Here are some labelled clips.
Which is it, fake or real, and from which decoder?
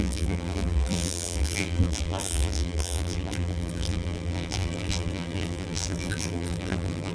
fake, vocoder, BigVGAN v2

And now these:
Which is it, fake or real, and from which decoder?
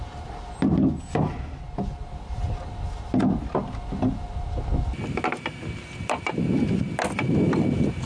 real